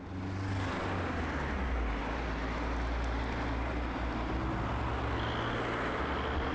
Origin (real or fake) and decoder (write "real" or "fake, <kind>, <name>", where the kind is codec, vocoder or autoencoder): real